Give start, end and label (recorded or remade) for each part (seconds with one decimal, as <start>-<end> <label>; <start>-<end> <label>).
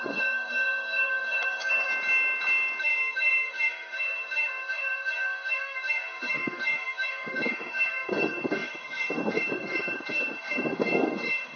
0.0-1.9 remade; 1.9-2.8 recorded; 2.8-11.6 remade